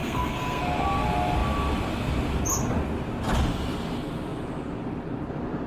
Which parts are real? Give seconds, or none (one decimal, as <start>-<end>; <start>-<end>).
0.6-5.7